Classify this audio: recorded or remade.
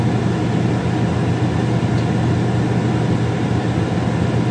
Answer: recorded